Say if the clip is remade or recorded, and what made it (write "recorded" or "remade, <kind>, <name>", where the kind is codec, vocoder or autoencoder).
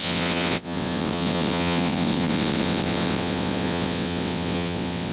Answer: remade, vocoder, WaveNeXt